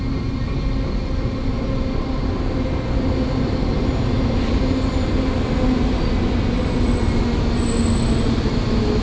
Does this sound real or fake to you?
real